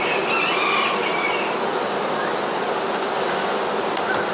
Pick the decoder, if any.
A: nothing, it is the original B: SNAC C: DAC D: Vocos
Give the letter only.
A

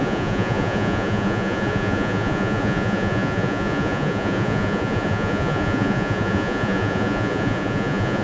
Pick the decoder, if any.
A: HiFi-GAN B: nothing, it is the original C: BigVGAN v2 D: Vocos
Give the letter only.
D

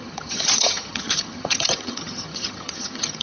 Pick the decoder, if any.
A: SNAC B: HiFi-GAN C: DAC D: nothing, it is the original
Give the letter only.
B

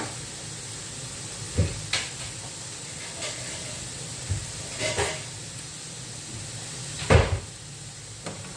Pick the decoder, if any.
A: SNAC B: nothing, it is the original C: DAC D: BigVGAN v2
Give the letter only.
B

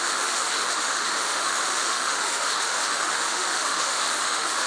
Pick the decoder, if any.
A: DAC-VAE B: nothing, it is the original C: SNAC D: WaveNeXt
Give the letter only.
A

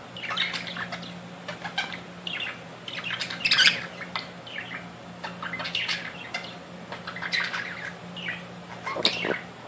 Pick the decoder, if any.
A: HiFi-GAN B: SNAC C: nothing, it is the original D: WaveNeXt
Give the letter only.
C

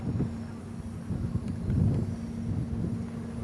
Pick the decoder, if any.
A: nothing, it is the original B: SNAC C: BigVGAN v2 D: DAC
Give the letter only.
A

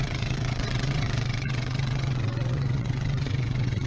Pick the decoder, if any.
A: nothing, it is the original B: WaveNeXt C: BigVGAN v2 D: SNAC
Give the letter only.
B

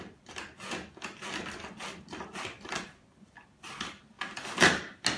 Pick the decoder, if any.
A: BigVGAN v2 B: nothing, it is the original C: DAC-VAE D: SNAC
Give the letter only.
B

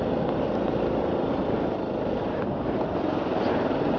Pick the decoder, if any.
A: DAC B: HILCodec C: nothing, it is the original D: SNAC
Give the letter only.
C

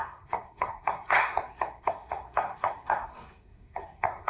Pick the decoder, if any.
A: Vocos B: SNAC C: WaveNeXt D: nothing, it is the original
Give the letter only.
B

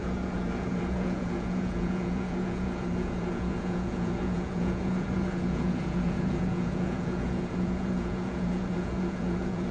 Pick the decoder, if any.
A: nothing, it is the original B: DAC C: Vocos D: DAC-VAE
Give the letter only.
C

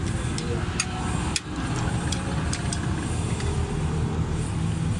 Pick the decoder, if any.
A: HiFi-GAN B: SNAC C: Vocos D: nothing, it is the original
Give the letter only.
D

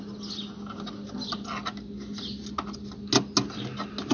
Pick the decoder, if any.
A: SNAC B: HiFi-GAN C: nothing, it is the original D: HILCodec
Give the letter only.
C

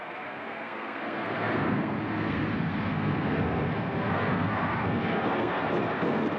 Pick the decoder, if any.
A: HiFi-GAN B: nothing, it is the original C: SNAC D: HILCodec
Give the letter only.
C